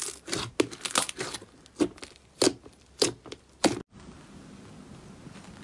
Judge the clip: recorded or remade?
recorded